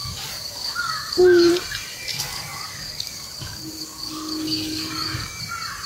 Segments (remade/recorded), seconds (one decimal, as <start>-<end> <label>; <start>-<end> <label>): 0.0-1.5 remade; 1.5-1.9 recorded; 1.9-5.4 remade; 5.4-5.9 recorded